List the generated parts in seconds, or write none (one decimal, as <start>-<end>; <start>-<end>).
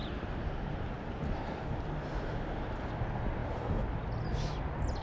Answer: none